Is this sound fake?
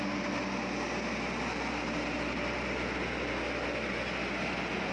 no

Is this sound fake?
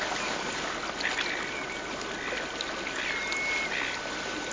no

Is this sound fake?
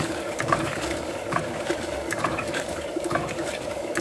yes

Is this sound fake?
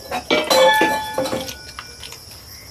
no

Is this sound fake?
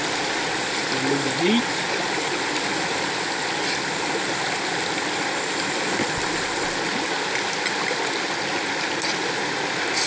no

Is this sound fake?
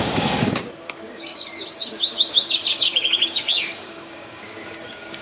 yes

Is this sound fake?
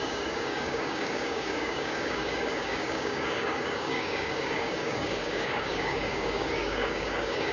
yes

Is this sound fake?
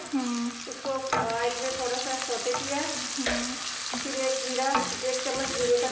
no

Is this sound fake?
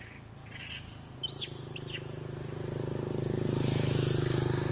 no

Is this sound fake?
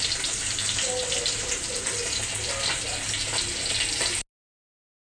no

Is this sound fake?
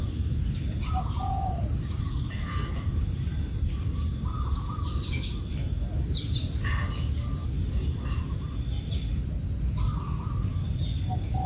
no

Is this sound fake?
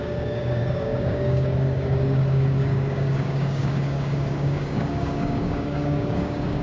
yes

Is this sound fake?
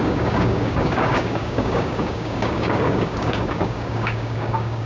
yes